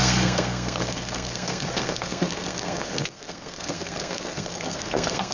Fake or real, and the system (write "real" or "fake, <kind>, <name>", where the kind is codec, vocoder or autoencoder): fake, codec, SNAC